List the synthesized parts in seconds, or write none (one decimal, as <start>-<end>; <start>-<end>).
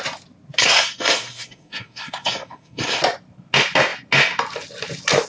0.6-3.0